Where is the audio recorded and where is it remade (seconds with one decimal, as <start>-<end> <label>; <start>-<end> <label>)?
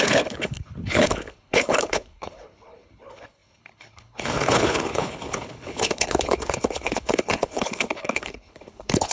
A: 0.0-9.1 remade